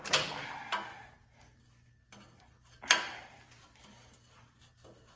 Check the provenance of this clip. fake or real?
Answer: real